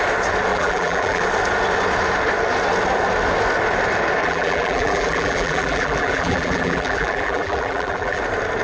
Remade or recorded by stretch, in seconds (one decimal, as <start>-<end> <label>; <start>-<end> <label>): 0.0-0.5 recorded; 0.5-1.2 remade; 1.2-4.2 recorded; 4.2-8.2 remade; 8.2-8.6 recorded

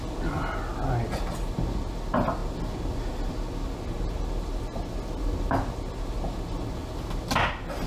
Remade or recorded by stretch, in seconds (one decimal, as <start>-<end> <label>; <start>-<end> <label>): 0.0-7.9 recorded